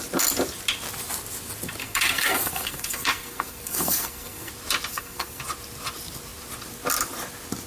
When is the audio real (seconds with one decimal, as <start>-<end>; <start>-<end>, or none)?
0.0-1.8; 4.5-4.9; 5.4-7.7